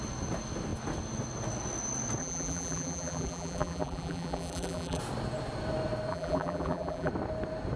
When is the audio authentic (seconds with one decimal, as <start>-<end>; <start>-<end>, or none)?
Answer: 0.0-2.2; 5.0-6.1; 7.1-7.8

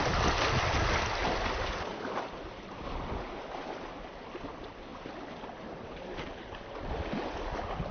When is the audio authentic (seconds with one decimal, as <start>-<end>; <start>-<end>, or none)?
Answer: 0.0-7.9

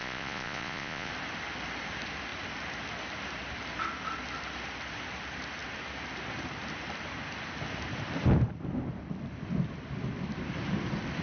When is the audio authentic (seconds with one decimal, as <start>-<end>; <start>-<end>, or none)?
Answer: 1.1-11.2

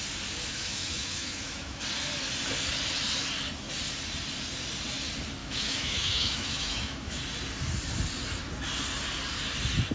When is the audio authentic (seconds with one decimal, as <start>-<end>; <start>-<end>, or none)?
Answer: 0.0-0.5; 1.8-5.4; 7.2-9.9